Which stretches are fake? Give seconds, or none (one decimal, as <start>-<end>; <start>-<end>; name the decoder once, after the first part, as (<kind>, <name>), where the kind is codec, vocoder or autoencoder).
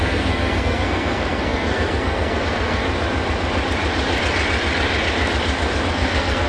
0.0-2.8 (codec, SNAC); 5.9-6.5